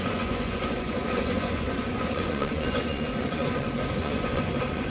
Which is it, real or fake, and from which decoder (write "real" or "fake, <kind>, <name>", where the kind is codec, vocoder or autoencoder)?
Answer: fake, vocoder, Vocos